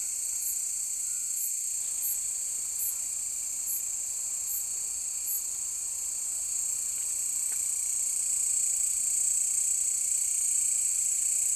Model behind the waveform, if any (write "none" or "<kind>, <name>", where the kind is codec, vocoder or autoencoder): none